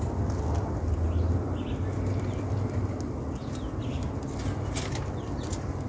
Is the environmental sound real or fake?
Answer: real